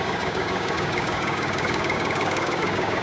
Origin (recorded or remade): remade